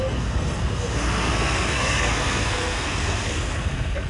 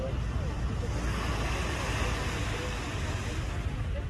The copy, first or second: first